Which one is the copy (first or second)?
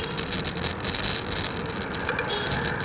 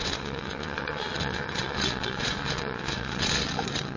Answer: second